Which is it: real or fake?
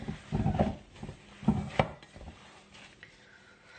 real